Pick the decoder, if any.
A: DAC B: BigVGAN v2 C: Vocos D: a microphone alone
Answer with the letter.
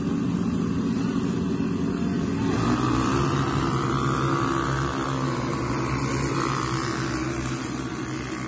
D